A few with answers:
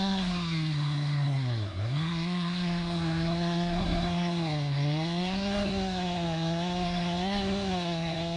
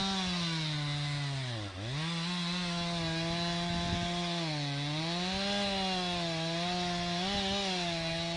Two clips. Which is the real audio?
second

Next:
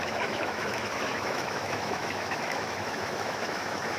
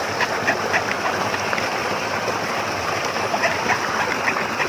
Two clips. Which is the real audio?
second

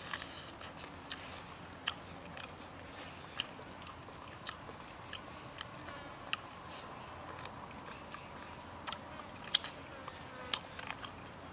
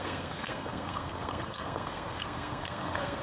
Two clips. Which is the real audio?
first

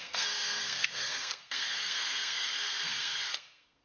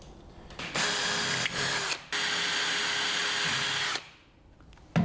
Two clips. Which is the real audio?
second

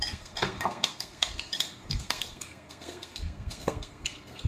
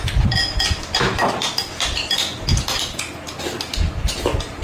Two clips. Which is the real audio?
second